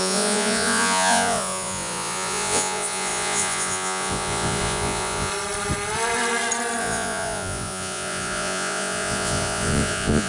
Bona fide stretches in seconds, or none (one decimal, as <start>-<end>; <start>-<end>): 5.3-6.8

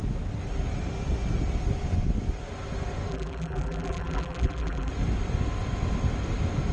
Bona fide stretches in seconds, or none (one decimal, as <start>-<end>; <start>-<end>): 0.0-3.1; 4.9-6.7

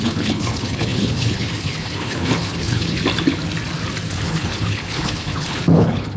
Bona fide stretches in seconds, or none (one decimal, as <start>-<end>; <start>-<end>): 3.0-4.1

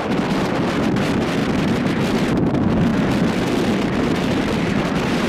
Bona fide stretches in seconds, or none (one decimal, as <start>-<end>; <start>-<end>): 0.0-5.3

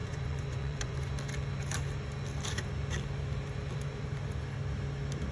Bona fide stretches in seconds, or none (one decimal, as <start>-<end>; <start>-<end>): 1.1-5.3

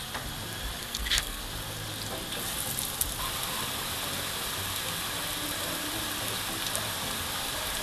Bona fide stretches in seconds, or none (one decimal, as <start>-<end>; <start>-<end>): 0.0-0.8; 1.4-7.8

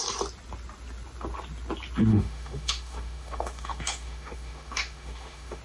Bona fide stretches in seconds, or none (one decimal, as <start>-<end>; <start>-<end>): 0.0-2.1

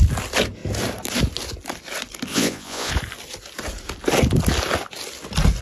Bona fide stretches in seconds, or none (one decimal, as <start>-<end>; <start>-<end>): 0.0-2.3; 2.9-5.6